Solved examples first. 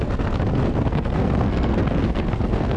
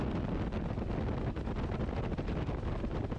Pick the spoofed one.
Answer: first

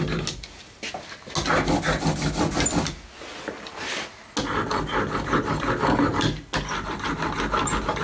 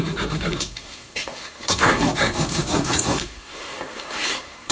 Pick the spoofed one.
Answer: second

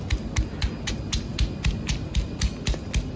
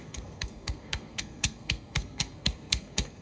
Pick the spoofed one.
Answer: second